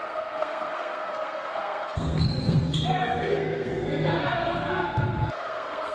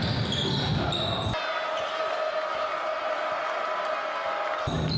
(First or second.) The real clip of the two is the second